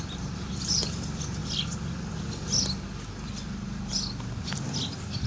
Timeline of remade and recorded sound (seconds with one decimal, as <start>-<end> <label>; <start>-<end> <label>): 0.0-5.3 recorded